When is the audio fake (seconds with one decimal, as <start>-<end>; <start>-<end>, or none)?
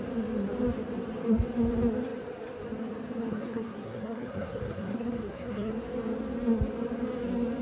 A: 3.2-5.7